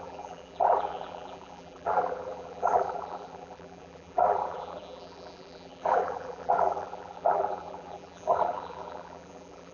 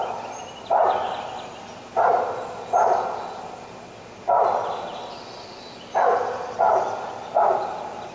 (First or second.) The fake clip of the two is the first